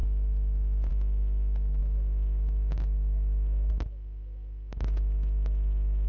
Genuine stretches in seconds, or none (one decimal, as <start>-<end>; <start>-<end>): 0.0-6.1